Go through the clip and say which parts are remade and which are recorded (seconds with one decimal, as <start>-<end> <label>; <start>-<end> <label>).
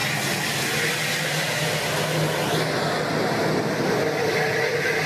0.0-5.1 recorded